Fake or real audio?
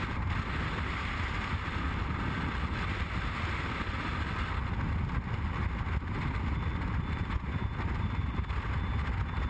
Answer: real